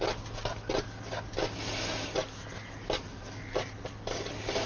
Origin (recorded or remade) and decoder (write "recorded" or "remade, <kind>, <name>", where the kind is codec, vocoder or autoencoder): recorded